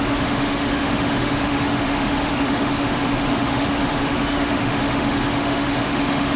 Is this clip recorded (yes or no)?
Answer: no